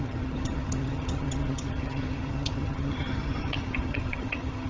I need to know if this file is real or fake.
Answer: fake